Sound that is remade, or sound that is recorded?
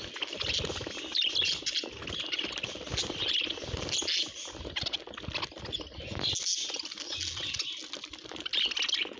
recorded